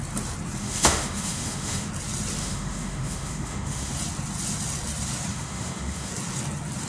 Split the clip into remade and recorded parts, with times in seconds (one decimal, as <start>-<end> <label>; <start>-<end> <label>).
0.0-0.6 recorded; 0.6-1.9 remade; 1.9-2.4 recorded; 2.4-3.9 remade; 3.9-5.3 recorded; 5.3-6.1 remade; 6.1-6.9 recorded